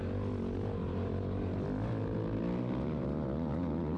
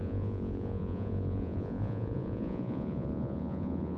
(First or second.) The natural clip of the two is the first